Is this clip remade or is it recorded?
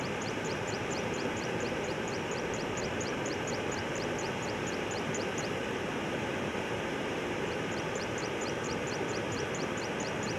remade